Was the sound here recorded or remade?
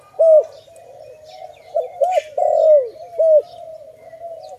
recorded